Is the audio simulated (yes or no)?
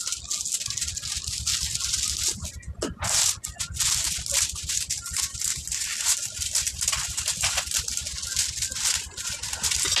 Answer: no